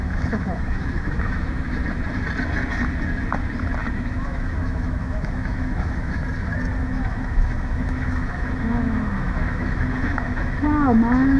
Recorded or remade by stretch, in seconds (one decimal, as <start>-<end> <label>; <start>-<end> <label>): 0.0-1.8 remade; 1.8-3.9 recorded; 3.9-6.2 remade; 6.2-6.8 recorded; 6.8-11.4 remade